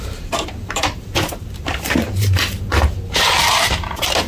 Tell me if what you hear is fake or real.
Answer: fake